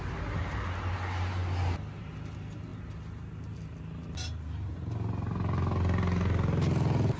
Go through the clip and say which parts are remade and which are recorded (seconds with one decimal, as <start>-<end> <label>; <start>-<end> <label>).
0.0-7.2 recorded